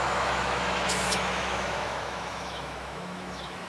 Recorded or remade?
remade